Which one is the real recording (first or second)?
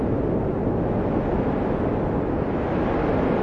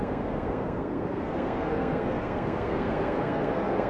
first